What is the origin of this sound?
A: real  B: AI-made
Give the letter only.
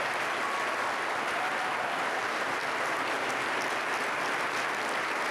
A